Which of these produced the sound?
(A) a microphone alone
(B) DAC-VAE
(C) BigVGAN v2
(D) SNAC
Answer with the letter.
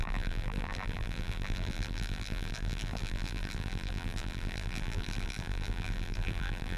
C